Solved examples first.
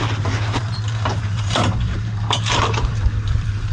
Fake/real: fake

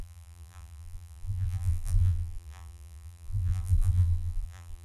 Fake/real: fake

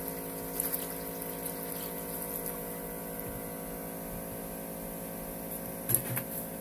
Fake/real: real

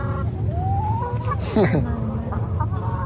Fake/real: real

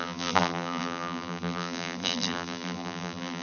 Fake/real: fake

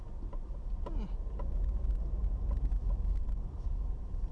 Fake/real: real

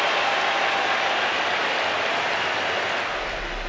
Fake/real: real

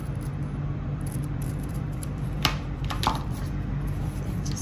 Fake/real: fake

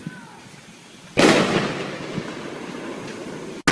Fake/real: real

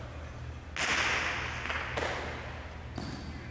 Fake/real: real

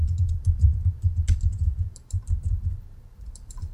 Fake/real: fake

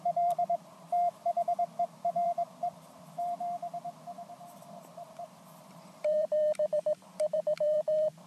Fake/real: fake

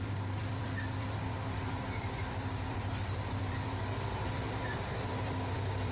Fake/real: fake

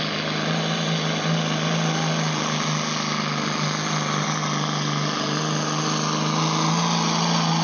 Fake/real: real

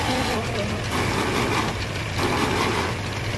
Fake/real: real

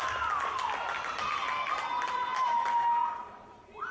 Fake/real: real